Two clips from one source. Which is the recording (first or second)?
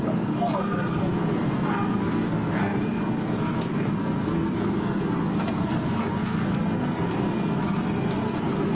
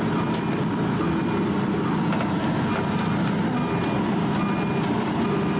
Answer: second